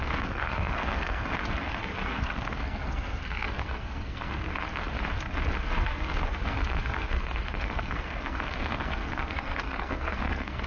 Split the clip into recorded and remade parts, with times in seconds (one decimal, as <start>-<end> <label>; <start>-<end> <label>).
0.0-4.5 remade; 4.5-5.6 recorded; 5.6-10.7 remade